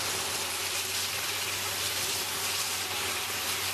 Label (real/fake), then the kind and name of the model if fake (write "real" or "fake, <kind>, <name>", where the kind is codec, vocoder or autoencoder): fake, vocoder, BigVGAN v2